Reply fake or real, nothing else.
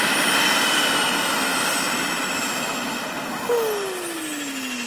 real